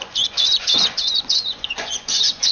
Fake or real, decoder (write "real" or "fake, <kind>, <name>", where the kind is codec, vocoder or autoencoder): fake, vocoder, Vocos